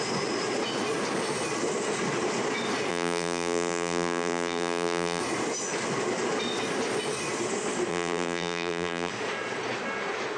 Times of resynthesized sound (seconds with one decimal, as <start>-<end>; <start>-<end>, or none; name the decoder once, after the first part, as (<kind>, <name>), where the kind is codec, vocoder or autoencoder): 2.9-5.2 (vocoder, BigVGAN v2); 7.9-9.1